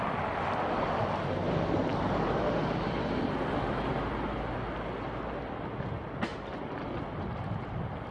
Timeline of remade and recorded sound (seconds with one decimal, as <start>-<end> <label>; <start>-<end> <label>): 0.0-8.1 recorded